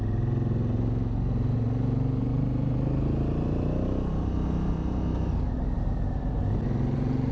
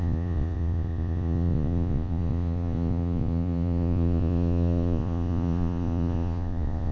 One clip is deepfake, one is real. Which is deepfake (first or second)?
second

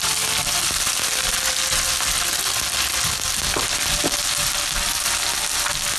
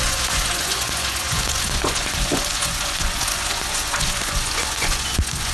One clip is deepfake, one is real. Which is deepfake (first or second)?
second